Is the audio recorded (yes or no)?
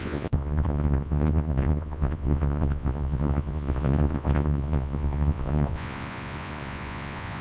no